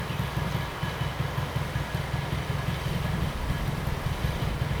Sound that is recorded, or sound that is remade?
recorded